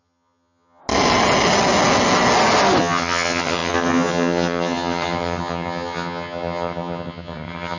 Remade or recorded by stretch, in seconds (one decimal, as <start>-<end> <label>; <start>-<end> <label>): 0.0-0.8 remade; 0.8-2.8 recorded; 2.8-7.8 remade